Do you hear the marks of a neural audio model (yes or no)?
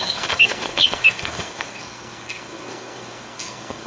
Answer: yes